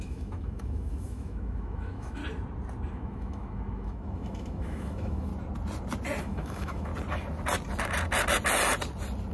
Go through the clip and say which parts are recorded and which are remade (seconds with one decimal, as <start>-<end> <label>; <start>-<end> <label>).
0.0-2.2 remade; 2.2-2.9 recorded; 2.9-5.3 remade; 5.3-6.2 recorded; 6.2-6.9 remade; 6.9-9.3 recorded